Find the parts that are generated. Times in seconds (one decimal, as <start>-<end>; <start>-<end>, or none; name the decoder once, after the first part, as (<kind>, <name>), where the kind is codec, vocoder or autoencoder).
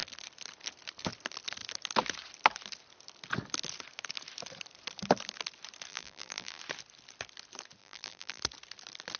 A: 5.9-6.6 (vocoder, BigVGAN v2); 7.8-8.4